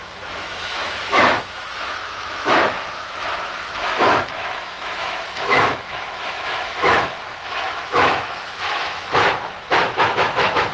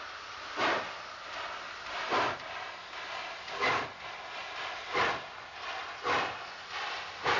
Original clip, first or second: second